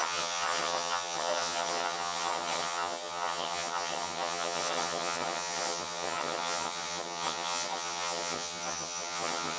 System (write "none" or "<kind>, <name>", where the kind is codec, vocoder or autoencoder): vocoder, HiFi-GAN